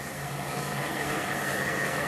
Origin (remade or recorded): remade